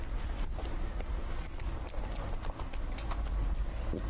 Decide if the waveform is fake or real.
real